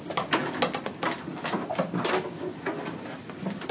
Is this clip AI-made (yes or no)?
no